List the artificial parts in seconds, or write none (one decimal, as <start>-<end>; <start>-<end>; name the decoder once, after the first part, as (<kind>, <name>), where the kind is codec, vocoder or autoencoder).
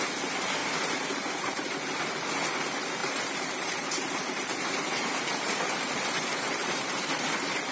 0.6-2.0 (vocoder, BigVGAN v2); 3.0-7.0